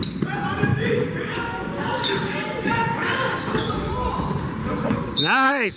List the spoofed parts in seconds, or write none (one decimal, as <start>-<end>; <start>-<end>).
0.7-3.4; 4.6-5.2